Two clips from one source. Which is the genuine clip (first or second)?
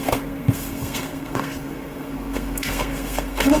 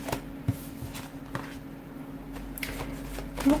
second